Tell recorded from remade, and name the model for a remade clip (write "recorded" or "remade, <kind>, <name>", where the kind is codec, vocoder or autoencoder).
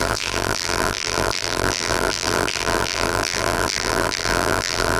remade, vocoder, BigVGAN v2